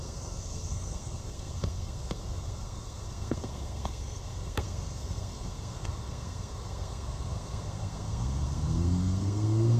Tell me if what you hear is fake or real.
fake